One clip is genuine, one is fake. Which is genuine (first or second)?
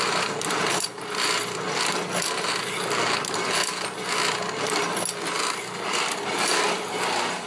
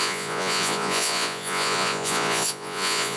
first